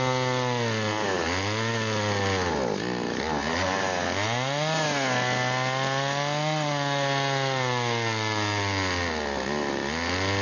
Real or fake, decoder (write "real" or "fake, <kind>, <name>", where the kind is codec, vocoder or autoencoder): real